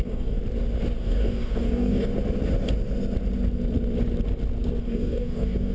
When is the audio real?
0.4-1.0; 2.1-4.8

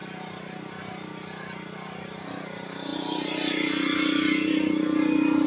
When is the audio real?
0.0-5.5

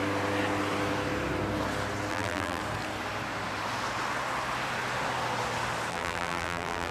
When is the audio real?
0.0-2.1; 2.6-5.9

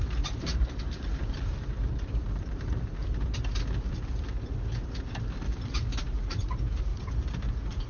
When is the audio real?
3.0-6.0; 6.9-7.9

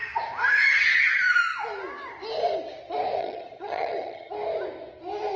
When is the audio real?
0.0-3.2; 4.3-5.4